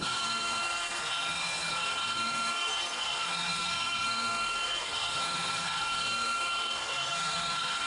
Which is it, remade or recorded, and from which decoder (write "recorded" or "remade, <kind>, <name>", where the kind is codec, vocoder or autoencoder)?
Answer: remade, codec, SNAC